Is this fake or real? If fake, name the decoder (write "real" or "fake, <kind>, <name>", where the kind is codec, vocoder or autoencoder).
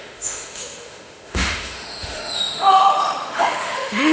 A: fake, autoencoder, DAC-VAE